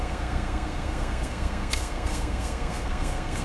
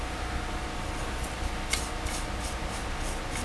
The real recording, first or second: second